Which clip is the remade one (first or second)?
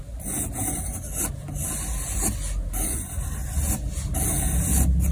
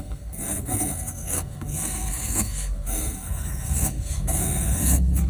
second